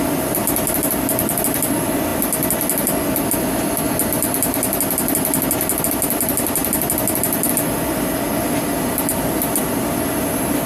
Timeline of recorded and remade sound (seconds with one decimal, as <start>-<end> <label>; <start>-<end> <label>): 0.0-10.7 recorded